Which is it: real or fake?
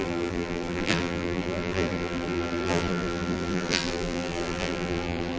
fake